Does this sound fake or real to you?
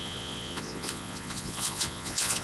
fake